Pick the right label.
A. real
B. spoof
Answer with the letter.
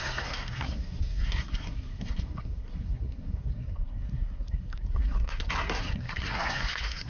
B